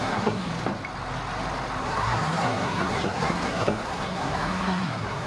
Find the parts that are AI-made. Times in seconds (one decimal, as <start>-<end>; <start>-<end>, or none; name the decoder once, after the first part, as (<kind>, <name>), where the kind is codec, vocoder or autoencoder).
0.0-0.5 (codec, SNAC); 1.8-5.3